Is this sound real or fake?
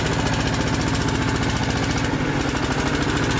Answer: real